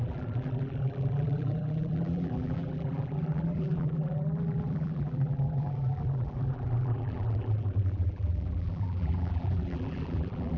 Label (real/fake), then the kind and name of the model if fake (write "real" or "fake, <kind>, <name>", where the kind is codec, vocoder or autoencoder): fake, vocoder, BigVGAN v2